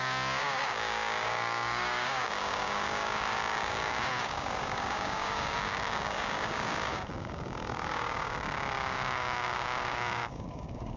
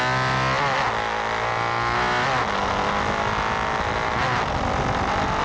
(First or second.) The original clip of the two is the second